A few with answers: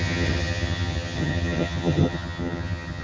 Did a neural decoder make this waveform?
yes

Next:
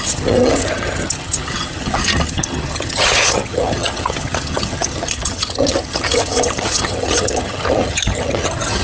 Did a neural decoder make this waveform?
yes